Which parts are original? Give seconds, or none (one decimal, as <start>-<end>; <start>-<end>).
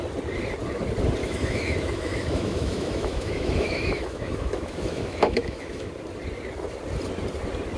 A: 0.0-1.2; 5.9-7.8